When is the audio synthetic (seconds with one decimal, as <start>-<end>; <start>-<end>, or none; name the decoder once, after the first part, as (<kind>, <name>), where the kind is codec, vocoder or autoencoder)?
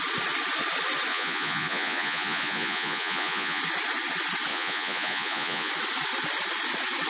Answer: 1.1-3.6 (vocoder, Vocos); 4.5-5.7